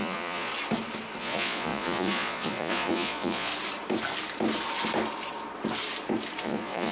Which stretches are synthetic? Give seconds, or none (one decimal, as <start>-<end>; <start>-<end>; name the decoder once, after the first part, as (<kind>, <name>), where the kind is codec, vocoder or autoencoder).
0.0-0.5 (vocoder, Vocos); 1.2-3.5; 6.4-6.9